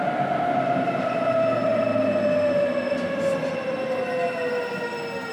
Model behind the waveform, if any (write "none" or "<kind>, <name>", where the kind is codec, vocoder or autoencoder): none